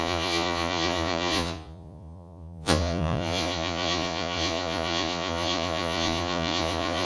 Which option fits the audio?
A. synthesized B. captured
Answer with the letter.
A